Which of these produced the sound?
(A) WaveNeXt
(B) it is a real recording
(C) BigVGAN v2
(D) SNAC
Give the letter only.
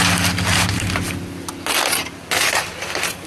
B